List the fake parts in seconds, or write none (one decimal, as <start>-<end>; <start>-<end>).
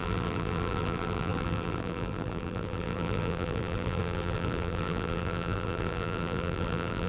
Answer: 0.0-7.1